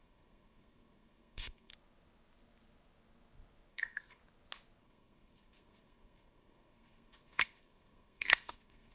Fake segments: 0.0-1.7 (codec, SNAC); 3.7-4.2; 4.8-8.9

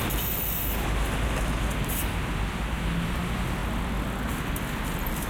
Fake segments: none

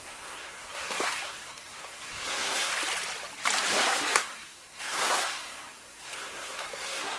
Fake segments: 0.0-2.7 (codec, SNAC); 3.8-7.2

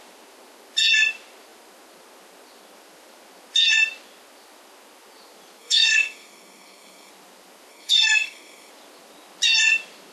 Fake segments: 5.6-7.1 (codec, SNAC); 7.7-8.7